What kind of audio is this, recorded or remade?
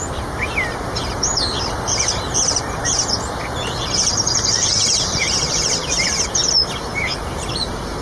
remade